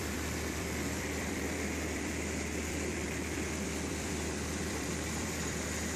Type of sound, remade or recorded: remade